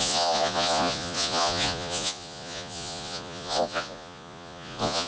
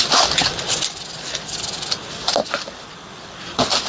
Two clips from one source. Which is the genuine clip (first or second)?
second